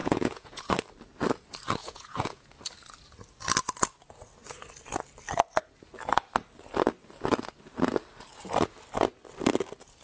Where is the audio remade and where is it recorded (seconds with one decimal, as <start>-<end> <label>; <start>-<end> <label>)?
0.0-0.7 remade; 0.7-1.8 recorded; 1.8-2.5 remade; 2.5-10.0 recorded